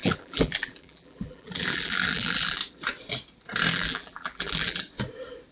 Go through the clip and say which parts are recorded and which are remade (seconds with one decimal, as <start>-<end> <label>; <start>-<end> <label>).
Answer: 0.0-2.6 remade; 2.6-3.7 recorded; 3.7-4.8 remade; 4.8-5.5 recorded

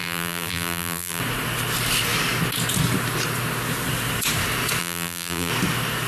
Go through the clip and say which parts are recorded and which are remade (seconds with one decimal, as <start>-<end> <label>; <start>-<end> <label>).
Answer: 0.0-1.2 remade; 1.2-4.8 recorded; 4.8-5.5 remade; 5.5-6.1 recorded

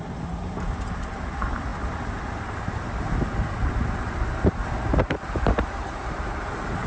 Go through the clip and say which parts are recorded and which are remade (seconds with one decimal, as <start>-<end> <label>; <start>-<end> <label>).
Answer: 0.0-6.9 remade

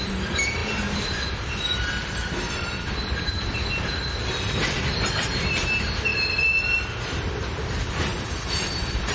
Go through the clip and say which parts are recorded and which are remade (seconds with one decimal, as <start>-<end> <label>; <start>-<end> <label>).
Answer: 0.0-6.1 remade; 6.1-6.8 recorded; 6.8-9.1 remade

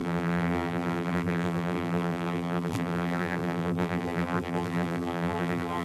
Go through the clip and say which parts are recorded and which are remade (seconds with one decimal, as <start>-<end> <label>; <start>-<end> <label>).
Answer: 0.0-5.8 remade

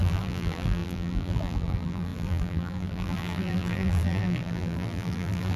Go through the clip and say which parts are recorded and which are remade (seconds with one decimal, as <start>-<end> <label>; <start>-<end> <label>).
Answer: 0.0-5.6 remade